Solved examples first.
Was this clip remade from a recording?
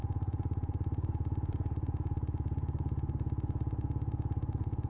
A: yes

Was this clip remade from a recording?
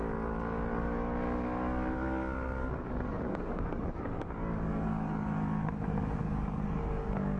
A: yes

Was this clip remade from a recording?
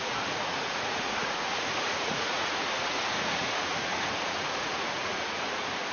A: yes